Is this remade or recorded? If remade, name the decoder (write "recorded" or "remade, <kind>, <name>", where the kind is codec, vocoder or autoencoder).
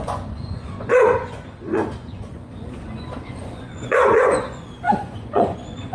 remade, vocoder, Vocos